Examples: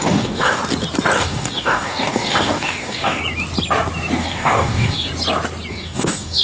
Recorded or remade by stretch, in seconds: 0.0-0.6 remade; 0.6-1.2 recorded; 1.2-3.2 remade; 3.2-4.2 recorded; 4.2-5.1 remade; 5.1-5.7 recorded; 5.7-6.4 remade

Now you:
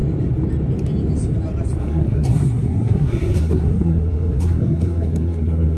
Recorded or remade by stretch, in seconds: 0.0-1.8 recorded; 1.8-5.8 remade

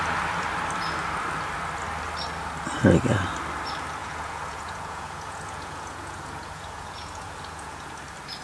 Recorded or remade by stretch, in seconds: 0.0-4.0 recorded; 4.0-8.0 remade; 8.0-8.4 recorded

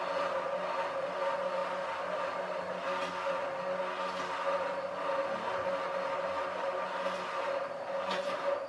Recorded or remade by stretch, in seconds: 0.0-8.7 recorded